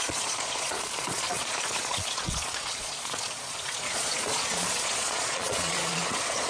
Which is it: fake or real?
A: fake